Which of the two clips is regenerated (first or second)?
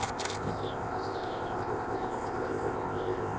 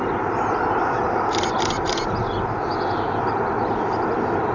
first